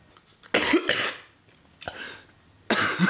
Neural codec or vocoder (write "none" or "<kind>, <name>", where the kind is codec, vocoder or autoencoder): none